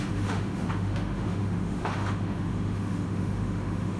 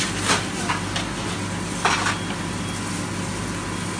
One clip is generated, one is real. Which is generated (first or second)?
first